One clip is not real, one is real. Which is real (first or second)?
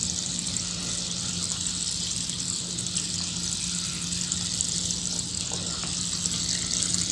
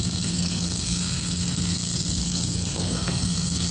first